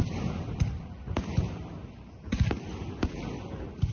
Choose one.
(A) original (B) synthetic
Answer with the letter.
A